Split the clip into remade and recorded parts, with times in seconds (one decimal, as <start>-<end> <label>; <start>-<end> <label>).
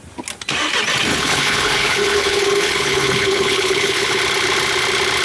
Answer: 0.0-1.1 recorded; 1.1-4.2 remade; 4.2-5.2 recorded